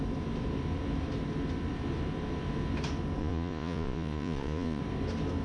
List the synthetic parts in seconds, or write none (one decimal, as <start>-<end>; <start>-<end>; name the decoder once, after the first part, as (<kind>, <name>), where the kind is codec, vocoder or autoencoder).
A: 3.2-4.8 (vocoder, Vocos)